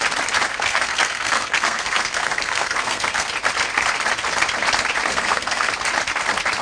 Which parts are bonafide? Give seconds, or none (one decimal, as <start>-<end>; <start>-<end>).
0.0-0.5; 3.3-5.1; 5.7-6.6